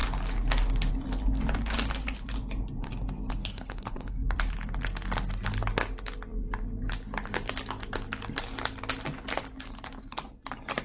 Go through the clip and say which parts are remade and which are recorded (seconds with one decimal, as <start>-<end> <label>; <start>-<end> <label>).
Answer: 0.0-3.4 recorded; 3.4-4.1 remade; 4.1-10.8 recorded